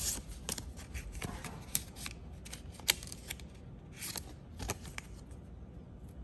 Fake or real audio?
real